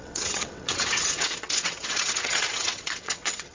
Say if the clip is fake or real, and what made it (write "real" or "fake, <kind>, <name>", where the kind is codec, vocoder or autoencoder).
fake, vocoder, WaveNeXt